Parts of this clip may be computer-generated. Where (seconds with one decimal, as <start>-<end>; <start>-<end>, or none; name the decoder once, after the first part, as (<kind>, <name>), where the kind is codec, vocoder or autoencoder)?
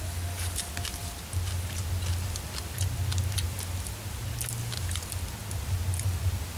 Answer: none